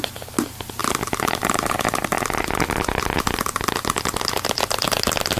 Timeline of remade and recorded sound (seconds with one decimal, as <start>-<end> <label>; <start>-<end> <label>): 0.0-0.8 recorded; 0.8-4.0 remade; 4.0-5.4 recorded